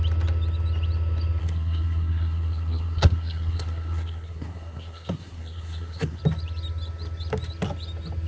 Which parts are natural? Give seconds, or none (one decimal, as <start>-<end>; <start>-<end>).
0.0-1.4; 6.2-8.3